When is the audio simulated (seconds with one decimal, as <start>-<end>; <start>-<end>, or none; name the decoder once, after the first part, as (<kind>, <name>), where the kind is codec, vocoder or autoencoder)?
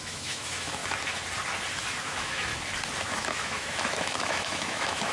0.0-0.8 (autoencoder, DAC-VAE); 2.0-2.5; 3.0-5.1